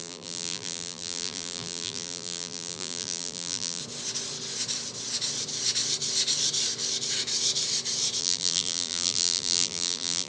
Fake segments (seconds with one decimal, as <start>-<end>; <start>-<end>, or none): 0.0-3.8; 8.2-10.3

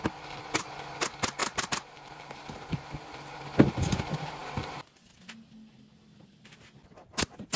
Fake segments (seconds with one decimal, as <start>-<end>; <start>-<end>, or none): 1.4-3.4